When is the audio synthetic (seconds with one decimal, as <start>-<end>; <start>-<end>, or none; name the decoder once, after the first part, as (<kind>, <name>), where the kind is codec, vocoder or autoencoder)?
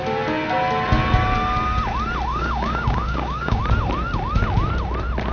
2.3-3.6 (codec, DAC)